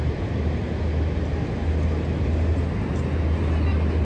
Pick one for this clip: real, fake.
real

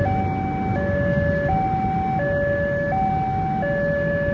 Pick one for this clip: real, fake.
real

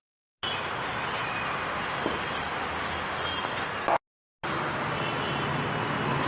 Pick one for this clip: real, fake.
real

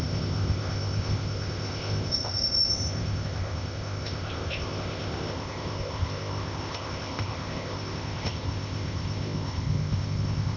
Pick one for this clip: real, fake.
fake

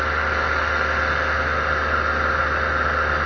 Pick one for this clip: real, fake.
real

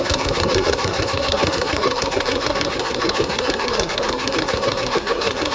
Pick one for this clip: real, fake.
fake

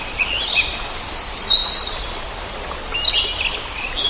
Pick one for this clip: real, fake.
real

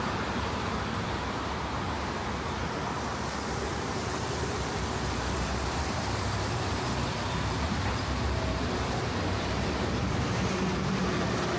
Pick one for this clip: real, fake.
fake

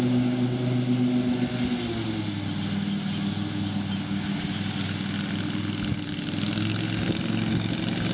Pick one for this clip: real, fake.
real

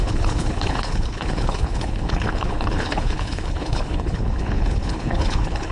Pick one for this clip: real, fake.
fake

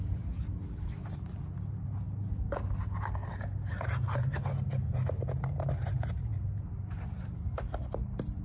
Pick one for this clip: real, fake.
real